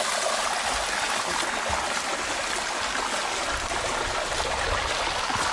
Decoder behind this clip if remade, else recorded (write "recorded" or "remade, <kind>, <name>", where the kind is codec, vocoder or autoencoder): recorded